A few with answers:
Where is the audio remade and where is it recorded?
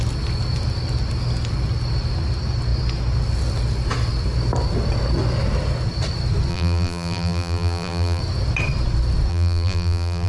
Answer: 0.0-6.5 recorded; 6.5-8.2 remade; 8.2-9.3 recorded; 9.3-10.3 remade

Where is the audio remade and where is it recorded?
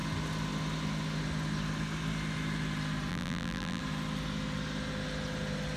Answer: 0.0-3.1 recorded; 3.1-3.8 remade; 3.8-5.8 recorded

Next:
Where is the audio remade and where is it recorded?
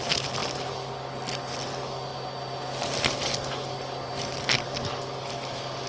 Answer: 0.0-5.9 recorded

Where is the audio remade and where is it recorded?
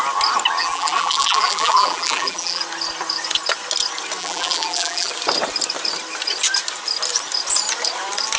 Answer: 0.0-0.6 recorded; 0.6-2.6 remade; 2.6-4.2 recorded; 4.2-5.1 remade; 5.1-8.4 recorded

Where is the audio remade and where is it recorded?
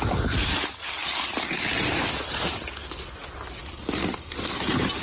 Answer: 0.0-5.0 recorded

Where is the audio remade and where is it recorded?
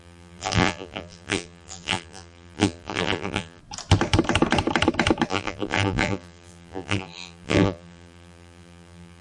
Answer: 0.0-3.6 remade; 3.6-5.3 recorded; 5.3-9.2 remade